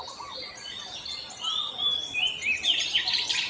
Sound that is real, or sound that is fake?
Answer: real